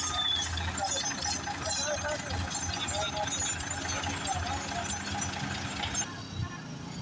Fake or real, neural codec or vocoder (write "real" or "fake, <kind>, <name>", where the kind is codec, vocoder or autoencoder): real